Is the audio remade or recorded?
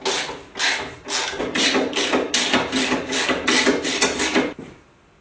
recorded